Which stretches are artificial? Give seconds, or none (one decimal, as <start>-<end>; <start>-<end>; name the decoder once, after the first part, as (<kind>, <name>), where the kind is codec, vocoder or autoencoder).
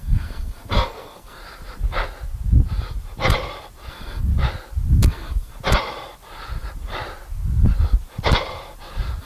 0.0-1.4 (codec, SNAC); 3.9-4.3; 4.9-5.5